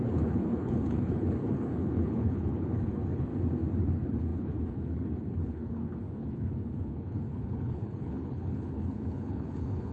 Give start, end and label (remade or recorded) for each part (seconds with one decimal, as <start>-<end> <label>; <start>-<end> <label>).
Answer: 0.0-3.3 remade; 3.3-3.8 recorded; 3.8-9.9 remade